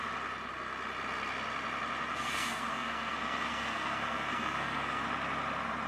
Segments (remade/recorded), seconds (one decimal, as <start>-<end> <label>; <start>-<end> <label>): 0.0-2.1 recorded; 2.1-5.0 remade; 5.0-5.9 recorded